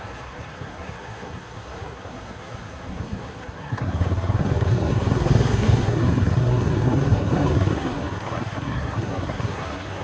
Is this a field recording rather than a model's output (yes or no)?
no